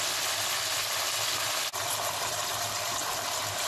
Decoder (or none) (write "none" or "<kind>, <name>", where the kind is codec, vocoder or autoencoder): none